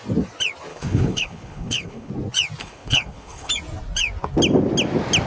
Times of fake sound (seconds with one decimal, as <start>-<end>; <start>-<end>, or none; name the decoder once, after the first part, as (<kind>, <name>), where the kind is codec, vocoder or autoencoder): 0.7-2.1 (codec, HILCodec); 2.6-3.5